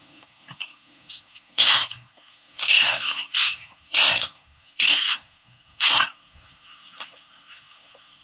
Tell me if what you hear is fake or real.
fake